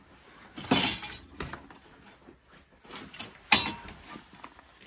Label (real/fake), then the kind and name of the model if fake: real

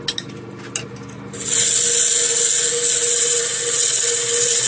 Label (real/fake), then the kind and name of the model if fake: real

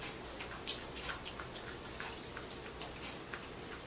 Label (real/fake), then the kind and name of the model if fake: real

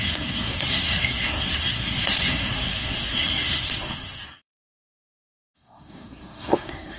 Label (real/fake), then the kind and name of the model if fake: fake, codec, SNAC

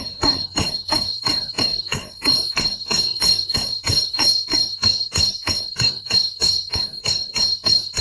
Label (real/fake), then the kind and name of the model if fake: fake, codec, SNAC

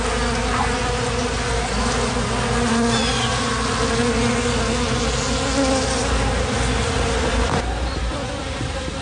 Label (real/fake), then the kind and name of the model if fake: real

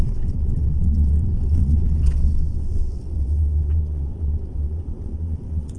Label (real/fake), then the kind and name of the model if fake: fake, vocoder, WaveNeXt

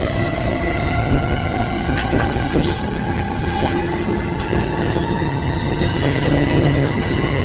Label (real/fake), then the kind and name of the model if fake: fake, vocoder, HiFi-GAN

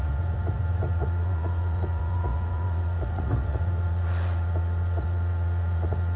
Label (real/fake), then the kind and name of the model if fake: fake, vocoder, Vocos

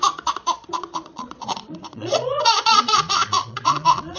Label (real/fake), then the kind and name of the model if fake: fake, vocoder, Vocos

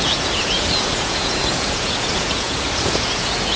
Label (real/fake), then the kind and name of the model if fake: fake, vocoder, Vocos